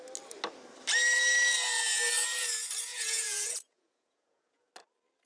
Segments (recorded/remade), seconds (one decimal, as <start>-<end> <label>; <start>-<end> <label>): 0.0-2.9 recorded; 2.9-4.7 remade; 4.7-5.3 recorded